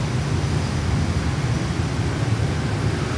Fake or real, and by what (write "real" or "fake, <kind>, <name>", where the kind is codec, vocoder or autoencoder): real